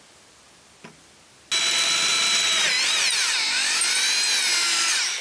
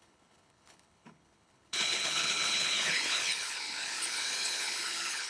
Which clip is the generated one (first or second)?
second